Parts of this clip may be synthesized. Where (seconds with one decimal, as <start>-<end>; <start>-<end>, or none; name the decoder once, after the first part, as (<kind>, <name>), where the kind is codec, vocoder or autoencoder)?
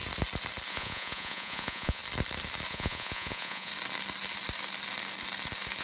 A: 0.7-2.0 (vocoder, Vocos); 2.7-3.7